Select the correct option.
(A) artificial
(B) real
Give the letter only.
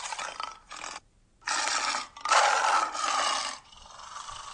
B